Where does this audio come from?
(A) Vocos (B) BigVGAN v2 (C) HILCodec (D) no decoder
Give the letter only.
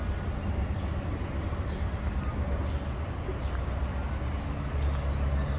D